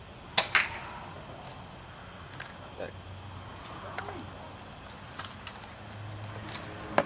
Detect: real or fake real